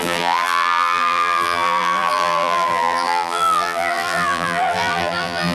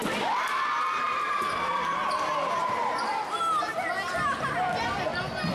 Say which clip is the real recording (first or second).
second